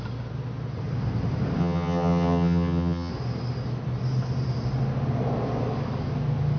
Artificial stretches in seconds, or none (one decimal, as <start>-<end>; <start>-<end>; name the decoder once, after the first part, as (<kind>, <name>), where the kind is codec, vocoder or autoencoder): 1.6-3.1 (vocoder, HiFi-GAN)